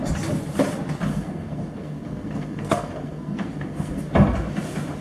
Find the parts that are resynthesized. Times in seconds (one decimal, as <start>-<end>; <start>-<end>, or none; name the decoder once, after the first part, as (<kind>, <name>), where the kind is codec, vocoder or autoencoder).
1.1-4.1 (codec, SNAC)